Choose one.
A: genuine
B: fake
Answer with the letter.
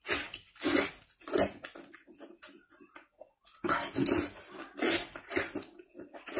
A